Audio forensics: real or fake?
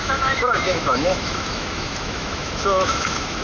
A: fake